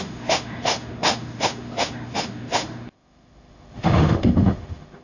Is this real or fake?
fake